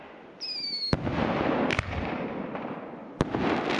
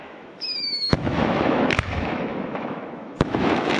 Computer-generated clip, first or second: second